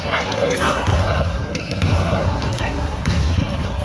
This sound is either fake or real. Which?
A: fake